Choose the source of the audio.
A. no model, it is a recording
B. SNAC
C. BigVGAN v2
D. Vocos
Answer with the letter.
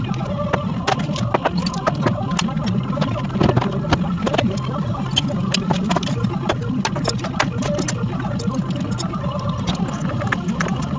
A